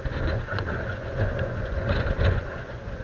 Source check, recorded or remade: remade